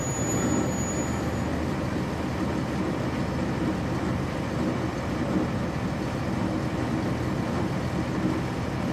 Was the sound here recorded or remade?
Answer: recorded